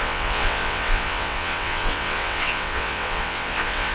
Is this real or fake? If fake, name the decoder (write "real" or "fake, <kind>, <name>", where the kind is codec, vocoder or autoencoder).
fake, vocoder, WaveNeXt